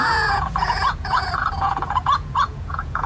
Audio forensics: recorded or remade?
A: remade